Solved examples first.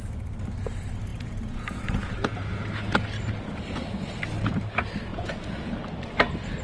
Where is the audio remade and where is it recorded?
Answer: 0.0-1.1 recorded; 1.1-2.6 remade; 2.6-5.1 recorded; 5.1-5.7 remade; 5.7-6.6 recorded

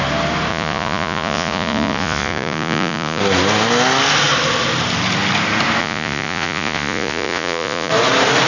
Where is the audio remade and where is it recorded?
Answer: 0.0-0.5 recorded; 0.5-3.2 remade; 3.2-5.8 recorded; 5.8-7.9 remade; 7.9-8.5 recorded